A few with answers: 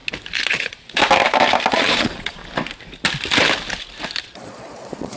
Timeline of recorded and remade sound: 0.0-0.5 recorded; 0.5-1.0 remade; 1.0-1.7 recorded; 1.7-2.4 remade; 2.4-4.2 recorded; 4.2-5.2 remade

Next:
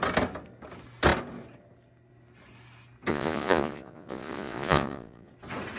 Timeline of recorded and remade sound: 0.0-3.1 recorded; 3.1-5.3 remade; 5.3-5.8 recorded